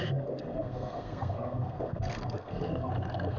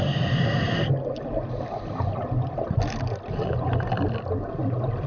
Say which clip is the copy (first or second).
first